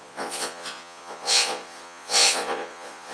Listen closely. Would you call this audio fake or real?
fake